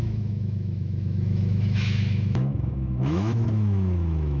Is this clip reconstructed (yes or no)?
yes